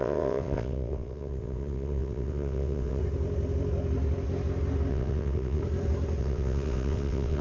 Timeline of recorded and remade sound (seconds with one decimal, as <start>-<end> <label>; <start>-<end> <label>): 0.0-3.0 remade; 3.0-4.9 recorded; 4.9-5.6 remade; 5.6-6.2 recorded; 6.2-7.4 remade